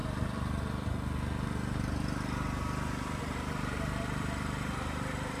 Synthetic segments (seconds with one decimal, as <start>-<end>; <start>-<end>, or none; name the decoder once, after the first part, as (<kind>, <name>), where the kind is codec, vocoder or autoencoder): none